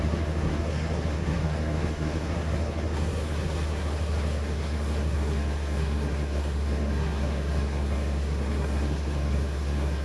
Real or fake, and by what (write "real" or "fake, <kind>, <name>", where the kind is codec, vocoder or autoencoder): fake, codec, SNAC